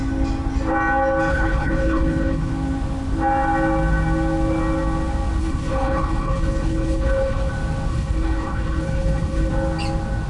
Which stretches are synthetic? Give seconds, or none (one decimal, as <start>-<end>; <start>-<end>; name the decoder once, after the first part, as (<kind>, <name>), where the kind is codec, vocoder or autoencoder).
1.3-2.5 (codec, HILCodec); 5.4-7.5; 7.9-9.5